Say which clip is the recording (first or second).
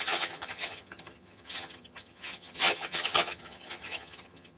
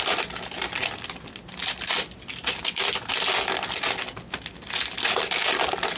second